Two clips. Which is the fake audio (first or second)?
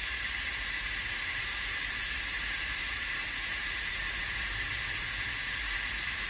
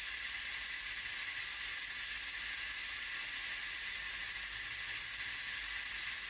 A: first